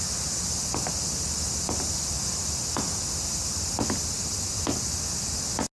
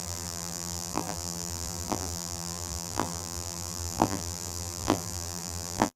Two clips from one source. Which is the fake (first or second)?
second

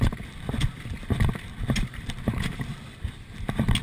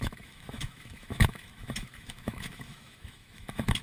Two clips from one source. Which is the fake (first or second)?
second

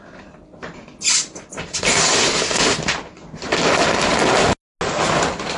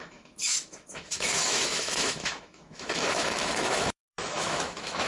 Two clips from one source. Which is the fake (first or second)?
second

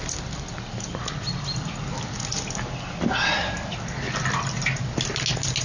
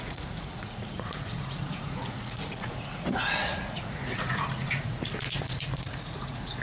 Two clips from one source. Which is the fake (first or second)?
second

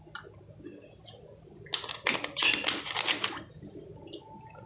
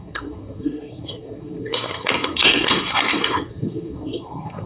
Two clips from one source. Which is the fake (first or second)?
second